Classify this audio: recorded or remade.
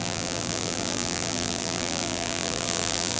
remade